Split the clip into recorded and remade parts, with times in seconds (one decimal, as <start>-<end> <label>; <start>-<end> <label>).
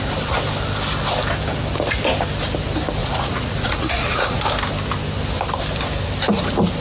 0.0-3.0 recorded; 3.0-4.4 remade; 4.4-6.8 recorded